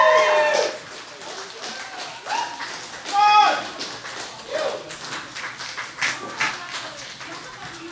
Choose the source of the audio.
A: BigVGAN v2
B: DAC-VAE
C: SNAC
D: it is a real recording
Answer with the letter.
D